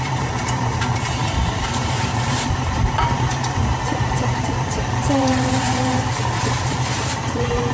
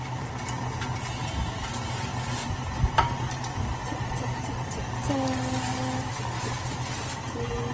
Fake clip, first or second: first